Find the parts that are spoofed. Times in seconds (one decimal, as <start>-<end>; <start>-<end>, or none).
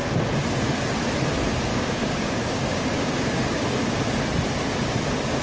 1.7-4.0